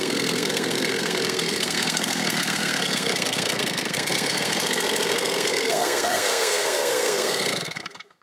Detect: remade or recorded remade